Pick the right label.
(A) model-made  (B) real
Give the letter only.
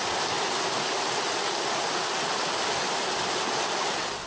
B